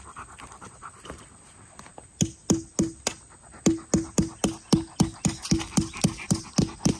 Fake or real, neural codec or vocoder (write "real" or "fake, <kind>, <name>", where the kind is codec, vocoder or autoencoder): real